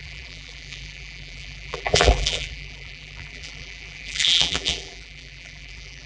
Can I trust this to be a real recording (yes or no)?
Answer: no